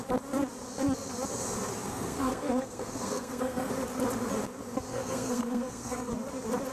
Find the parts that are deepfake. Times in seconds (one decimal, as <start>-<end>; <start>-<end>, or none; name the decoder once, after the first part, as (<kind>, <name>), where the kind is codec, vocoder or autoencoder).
1.8-3.7 (codec, SNAC); 4.9-6.1

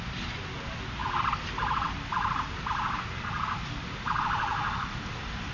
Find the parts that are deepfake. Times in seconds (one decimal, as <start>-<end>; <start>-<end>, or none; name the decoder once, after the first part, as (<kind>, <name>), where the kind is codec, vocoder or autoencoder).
none

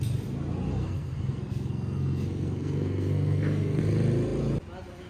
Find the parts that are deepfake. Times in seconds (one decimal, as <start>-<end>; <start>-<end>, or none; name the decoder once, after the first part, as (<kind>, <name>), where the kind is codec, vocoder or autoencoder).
0.7-3.8 (codec, SNAC)